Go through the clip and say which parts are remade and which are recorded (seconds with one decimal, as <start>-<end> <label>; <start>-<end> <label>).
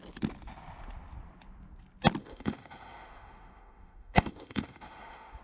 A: 0.0-2.2 recorded; 2.2-5.4 remade